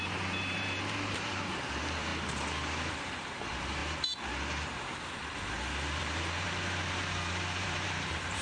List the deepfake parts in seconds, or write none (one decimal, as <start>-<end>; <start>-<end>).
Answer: 0.0-2.1; 2.9-3.8; 4.7-5.2; 6.0-8.4